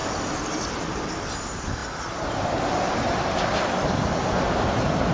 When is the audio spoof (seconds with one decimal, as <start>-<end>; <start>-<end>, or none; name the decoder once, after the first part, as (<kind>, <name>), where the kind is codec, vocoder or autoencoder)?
none